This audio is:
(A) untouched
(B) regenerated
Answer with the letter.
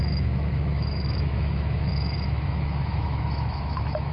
B